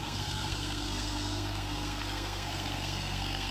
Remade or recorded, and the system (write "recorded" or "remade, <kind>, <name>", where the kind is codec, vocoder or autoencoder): remade, codec, SNAC